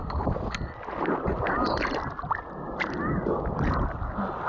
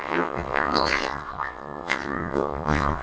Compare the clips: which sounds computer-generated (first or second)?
second